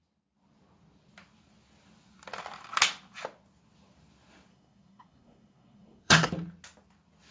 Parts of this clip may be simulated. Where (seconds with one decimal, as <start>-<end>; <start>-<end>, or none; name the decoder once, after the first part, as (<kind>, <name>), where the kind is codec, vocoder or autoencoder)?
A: 4.5-6.3 (codec, SNAC)